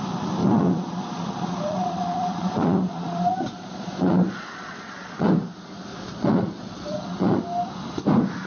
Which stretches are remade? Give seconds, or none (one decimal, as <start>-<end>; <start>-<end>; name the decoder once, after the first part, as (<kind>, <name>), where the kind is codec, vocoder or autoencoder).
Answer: 0.4-5.3 (vocoder, Vocos); 5.9-7.4